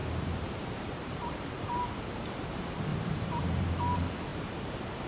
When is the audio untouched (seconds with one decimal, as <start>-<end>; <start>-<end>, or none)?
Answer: 1.5-2.9; 3.7-5.1